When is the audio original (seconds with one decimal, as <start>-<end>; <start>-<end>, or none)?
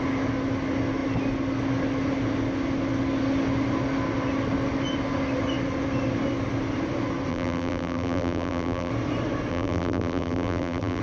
0.0-7.3; 8.9-9.5